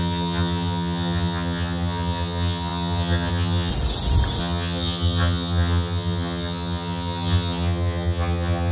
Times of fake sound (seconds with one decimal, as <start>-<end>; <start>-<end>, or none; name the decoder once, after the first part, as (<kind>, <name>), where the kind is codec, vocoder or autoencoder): 0.0-3.7 (vocoder, HiFi-GAN); 4.4-8.7